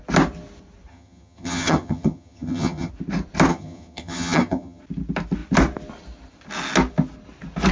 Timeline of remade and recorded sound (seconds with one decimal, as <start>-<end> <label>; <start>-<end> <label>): 0.0-0.9 recorded; 0.9-2.9 remade; 2.9-3.5 recorded; 3.5-4.8 remade; 4.8-7.7 recorded